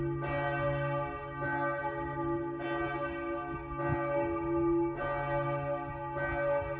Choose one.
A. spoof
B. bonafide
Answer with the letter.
B